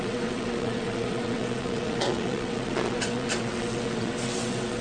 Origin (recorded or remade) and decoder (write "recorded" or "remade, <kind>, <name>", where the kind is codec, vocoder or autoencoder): remade, vocoder, WaveNeXt